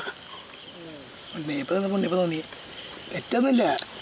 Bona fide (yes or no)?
yes